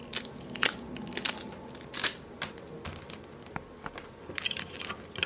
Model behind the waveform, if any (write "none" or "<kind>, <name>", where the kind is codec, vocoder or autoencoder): none